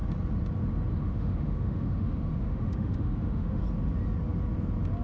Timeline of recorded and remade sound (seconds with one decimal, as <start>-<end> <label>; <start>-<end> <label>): 0.0-1.0 recorded; 1.0-3.6 remade; 3.6-5.0 recorded